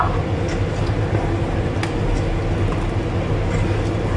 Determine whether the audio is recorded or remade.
recorded